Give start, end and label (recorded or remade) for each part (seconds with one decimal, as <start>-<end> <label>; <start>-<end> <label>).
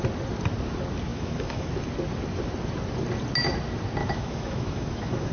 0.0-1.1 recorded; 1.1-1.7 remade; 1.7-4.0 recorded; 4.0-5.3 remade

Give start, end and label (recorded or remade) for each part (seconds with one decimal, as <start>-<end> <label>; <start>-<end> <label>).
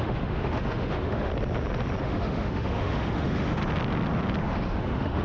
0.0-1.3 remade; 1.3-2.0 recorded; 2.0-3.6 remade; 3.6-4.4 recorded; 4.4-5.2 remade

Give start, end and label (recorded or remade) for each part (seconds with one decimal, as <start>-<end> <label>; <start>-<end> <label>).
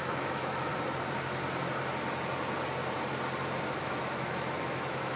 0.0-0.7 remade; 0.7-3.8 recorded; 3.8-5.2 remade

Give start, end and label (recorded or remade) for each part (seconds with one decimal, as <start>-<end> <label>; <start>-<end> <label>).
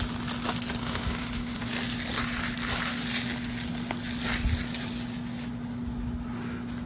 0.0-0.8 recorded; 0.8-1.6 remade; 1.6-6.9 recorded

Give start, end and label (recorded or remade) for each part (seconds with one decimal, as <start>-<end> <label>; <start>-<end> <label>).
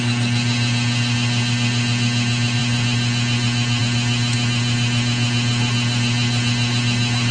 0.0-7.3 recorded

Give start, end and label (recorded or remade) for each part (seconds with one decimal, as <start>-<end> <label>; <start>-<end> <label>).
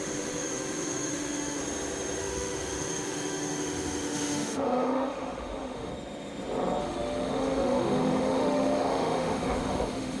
0.0-1.6 remade; 1.6-2.2 recorded; 2.2-5.9 remade; 5.9-6.8 recorded; 6.8-10.2 remade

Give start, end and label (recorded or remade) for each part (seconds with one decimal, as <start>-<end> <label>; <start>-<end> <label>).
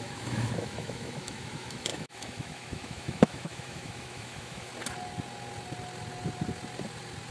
0.0-4.7 remade; 4.7-7.3 recorded